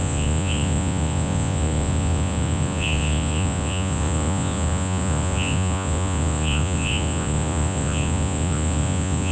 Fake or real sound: fake